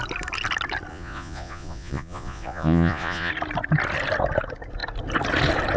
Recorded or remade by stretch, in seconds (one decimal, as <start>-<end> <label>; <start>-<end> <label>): 0.0-0.9 recorded; 0.9-3.3 remade; 3.3-5.8 recorded